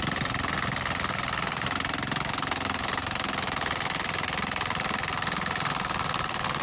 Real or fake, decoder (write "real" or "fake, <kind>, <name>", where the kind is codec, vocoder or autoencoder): real